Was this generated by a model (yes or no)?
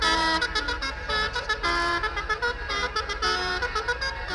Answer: yes